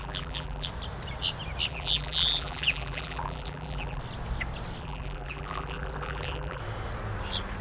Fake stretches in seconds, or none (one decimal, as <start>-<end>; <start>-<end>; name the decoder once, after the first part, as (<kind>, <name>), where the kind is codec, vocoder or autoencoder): 0.0-0.7 (vocoder, BigVGAN v2); 1.7-4.0; 4.8-6.6

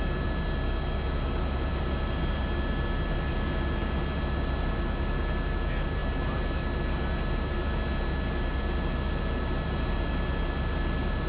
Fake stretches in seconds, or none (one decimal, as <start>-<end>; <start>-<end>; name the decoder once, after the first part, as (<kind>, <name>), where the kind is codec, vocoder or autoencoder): none

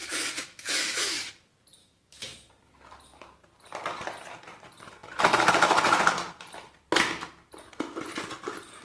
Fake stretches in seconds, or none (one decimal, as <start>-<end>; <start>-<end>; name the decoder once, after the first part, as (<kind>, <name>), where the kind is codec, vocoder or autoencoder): 0.0-1.3 (autoencoder, DAC-VAE); 1.8-2.5

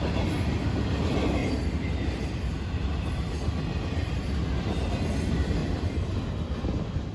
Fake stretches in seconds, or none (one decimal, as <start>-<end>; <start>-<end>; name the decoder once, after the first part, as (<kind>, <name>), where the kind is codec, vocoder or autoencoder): 1.4-4.2 (vocoder, BigVGAN v2); 5.6-6.2

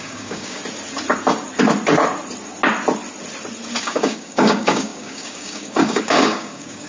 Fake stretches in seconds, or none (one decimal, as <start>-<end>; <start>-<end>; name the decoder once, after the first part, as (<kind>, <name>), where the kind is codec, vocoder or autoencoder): 0.0-0.6 (codec, DAC); 3.8-6.9

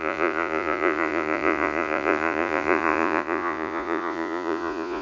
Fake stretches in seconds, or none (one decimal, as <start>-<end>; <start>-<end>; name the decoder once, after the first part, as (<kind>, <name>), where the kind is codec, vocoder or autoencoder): 0.0-5.0 (vocoder, Vocos)

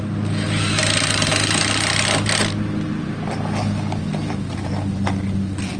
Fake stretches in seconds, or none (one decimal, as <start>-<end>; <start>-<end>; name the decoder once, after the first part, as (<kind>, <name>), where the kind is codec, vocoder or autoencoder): none

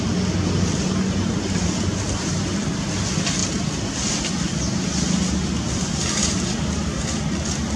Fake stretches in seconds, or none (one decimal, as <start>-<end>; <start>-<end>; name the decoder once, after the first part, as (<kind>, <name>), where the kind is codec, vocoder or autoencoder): none